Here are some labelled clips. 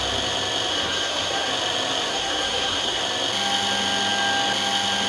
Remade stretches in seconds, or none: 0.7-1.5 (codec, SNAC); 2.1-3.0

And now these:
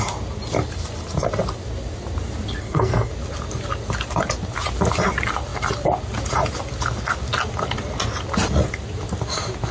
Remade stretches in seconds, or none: 2.6-3.1 (codec, SNAC)

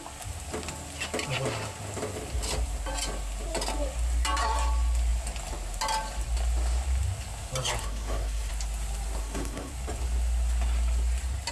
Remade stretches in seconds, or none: 7.8-8.5 (codec, SNAC); 9.2-9.7

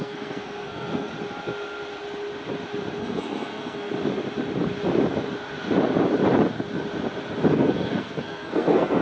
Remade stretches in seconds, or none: 0.0-1.1 (codec, SNAC); 3.0-3.9; 7.5-9.0